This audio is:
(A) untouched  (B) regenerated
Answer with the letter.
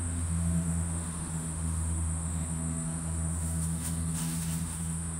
B